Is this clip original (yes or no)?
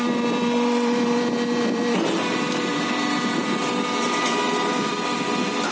no